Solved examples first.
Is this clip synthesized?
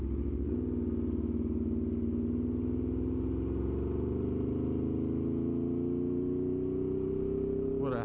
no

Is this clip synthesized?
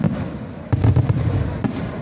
no